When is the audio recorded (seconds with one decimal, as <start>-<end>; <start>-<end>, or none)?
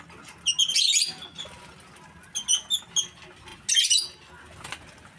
0.0-1.3; 2.1-5.2